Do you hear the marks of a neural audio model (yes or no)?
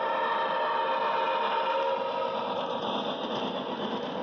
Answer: no